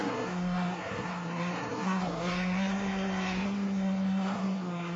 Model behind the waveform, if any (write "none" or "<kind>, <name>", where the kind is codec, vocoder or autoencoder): codec, SNAC